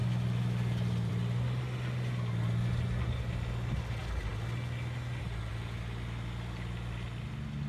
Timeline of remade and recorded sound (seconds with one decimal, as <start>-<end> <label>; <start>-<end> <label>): 0.0-7.7 recorded